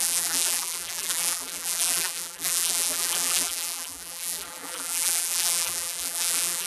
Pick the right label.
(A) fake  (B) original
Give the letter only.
A